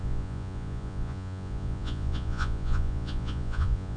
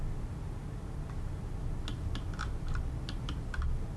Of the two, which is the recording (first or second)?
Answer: second